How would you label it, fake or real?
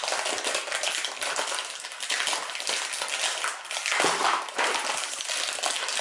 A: real